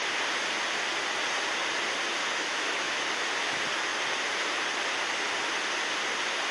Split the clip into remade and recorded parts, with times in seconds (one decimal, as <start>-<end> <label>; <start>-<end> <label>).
0.0-2.2 recorded; 2.2-3.0 remade; 3.0-6.5 recorded